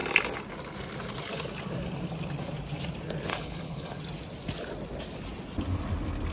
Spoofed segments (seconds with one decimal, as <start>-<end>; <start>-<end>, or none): 3.3-4.0

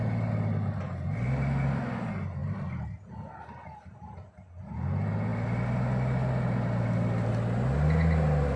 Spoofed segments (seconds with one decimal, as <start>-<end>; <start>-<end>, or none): none

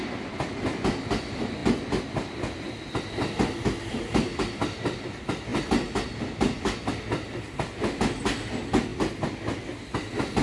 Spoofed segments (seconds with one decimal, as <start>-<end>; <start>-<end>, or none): none

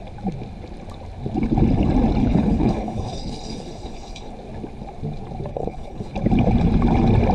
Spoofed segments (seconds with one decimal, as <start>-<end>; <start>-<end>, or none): 2.2-4.3; 5.5-6.1

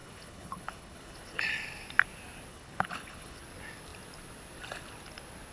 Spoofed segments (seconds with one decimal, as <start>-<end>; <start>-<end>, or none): 0.0-1.4; 2.5-3.4

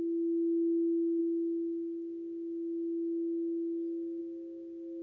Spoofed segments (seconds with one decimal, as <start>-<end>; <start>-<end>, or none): none

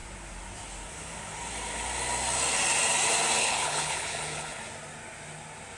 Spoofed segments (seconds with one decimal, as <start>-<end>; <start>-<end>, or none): 3.4-4.6

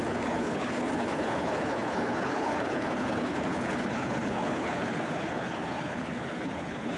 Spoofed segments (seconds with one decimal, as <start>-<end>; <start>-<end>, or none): 0.0-7.0